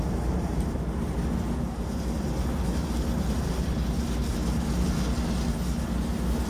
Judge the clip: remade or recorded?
recorded